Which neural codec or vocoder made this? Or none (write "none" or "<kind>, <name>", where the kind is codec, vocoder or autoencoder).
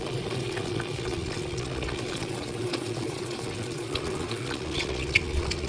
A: vocoder, Vocos